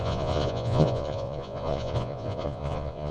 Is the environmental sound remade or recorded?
remade